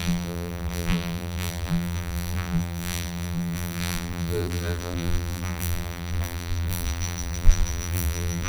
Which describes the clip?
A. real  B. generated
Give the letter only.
B